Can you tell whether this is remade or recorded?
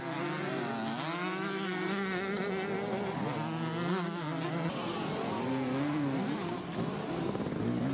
recorded